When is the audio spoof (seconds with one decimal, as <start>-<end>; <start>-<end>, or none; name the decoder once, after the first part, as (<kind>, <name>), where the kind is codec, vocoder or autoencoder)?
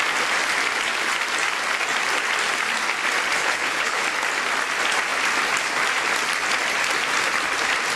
3.4-4.0 (codec, HILCodec)